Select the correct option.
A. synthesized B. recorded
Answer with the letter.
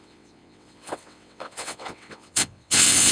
A